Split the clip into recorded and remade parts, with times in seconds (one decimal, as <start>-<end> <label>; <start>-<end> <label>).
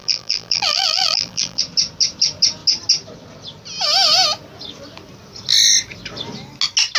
0.0-1.6 remade; 1.6-7.0 recorded